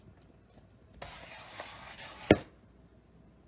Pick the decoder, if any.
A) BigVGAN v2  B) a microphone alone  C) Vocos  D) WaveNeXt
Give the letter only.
B